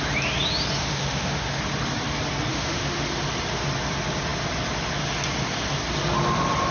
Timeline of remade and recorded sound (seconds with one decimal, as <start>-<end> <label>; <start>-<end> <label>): 0.0-0.8 recorded; 0.8-1.6 remade; 1.6-2.5 recorded; 2.5-3.1 remade; 3.1-6.7 recorded